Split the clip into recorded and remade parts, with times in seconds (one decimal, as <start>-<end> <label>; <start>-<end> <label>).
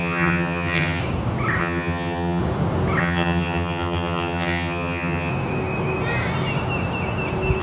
0.0-1.0 remade; 1.0-1.6 recorded; 1.6-2.4 remade; 2.4-3.0 recorded; 3.0-5.3 remade; 5.3-7.6 recorded